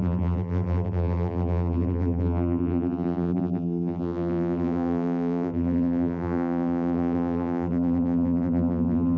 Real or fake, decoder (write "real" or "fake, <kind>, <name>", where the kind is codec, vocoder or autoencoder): fake, vocoder, BigVGAN v2